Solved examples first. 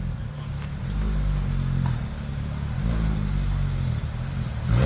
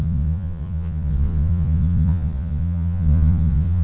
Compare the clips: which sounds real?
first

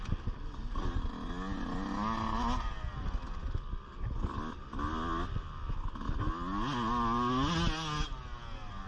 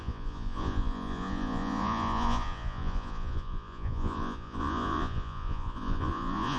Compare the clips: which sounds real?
first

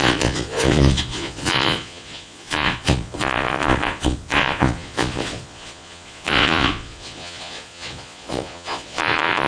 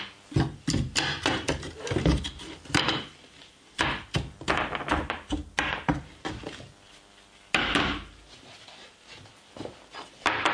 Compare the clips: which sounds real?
second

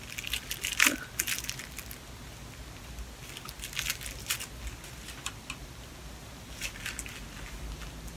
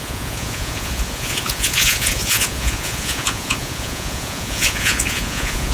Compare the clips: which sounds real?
first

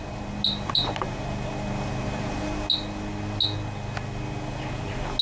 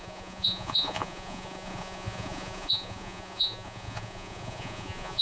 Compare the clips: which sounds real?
first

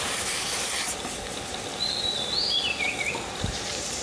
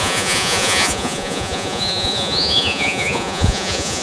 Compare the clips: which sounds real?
first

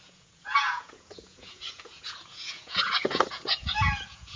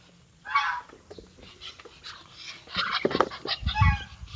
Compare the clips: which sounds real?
second